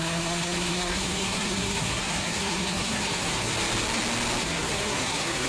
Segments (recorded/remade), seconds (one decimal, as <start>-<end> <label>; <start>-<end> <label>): 0.0-3.5 remade; 3.5-4.4 recorded; 4.4-5.5 remade